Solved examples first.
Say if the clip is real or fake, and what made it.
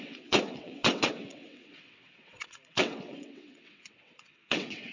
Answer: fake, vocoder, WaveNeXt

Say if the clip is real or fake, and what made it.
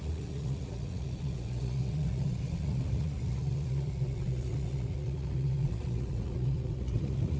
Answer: fake, vocoder, Vocos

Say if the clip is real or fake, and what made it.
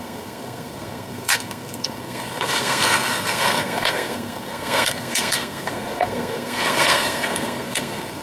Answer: fake, codec, SNAC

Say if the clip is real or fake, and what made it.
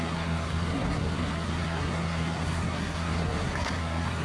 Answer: fake, codec, SNAC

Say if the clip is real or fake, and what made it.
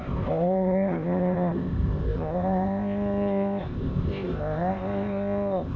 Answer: fake, codec, ZipCodec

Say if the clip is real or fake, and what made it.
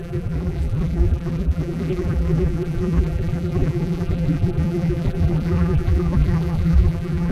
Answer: fake, vocoder, BigVGAN v2